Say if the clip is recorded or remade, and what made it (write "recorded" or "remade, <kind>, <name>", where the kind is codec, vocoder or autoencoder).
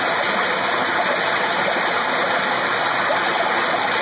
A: recorded